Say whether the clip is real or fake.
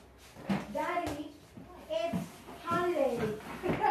real